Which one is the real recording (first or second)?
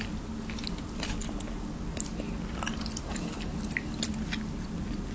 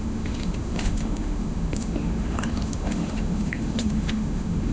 first